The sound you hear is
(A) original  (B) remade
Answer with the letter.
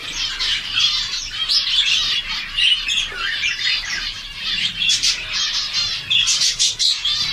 B